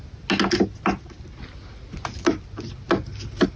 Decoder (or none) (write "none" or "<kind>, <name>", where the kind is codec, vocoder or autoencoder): none